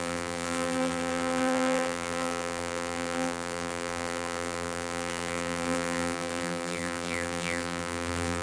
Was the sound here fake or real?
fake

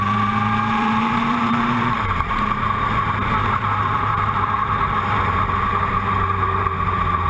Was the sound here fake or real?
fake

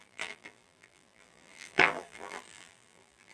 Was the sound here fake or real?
fake